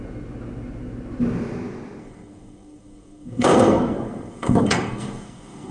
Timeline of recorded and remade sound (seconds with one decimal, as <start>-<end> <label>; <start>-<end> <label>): 0.0-2.0 recorded; 2.0-5.7 remade